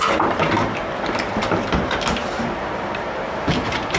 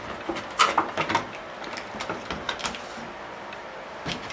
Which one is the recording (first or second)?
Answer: second